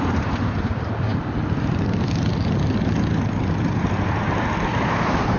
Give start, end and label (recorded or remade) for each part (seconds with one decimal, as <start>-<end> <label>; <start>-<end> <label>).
0.0-5.4 recorded